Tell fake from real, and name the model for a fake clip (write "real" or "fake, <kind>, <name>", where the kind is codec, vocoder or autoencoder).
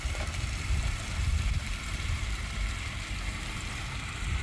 fake, vocoder, BigVGAN v2